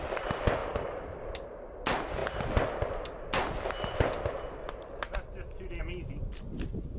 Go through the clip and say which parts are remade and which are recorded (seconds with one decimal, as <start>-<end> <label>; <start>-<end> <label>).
0.0-7.0 recorded

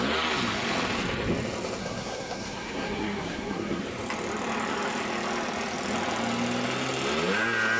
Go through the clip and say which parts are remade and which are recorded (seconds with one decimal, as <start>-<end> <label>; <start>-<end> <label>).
0.0-1.8 recorded; 1.8-3.8 remade; 3.8-7.8 recorded

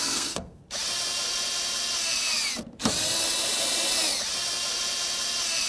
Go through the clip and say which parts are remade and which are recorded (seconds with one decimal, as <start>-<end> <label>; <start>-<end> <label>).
0.0-0.6 remade; 0.6-5.7 recorded

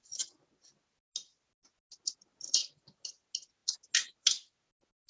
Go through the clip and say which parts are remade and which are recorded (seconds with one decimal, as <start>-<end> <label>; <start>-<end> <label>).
0.0-5.1 recorded